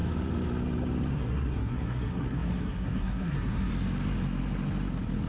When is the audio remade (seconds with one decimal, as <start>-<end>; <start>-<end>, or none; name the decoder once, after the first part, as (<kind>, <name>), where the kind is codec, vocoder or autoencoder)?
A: 1.1-3.7 (codec, SNAC)